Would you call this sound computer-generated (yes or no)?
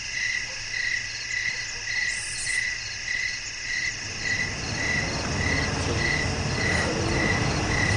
no